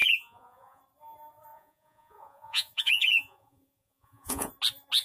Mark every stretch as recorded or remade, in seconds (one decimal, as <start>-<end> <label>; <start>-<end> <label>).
0.0-0.8 remade; 0.8-1.5 recorded; 1.5-4.5 remade; 4.5-5.0 recorded